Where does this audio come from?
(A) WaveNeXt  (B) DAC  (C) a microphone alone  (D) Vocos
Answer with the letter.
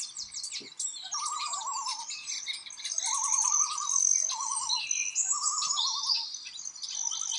C